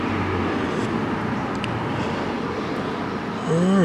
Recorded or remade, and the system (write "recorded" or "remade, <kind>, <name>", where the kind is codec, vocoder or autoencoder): recorded